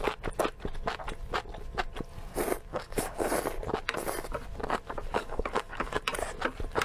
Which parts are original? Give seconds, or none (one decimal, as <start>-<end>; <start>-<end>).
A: 0.0-2.7; 3.3-5.1; 6.0-6.8